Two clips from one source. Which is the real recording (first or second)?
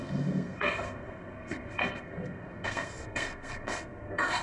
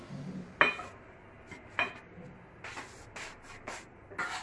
second